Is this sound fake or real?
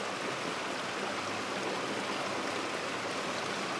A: real